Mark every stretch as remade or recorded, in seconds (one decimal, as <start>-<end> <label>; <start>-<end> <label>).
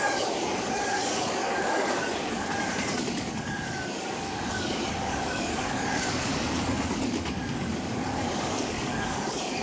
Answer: 0.0-9.6 remade